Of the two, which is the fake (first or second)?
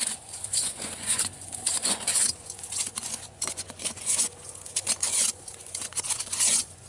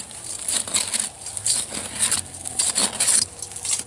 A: first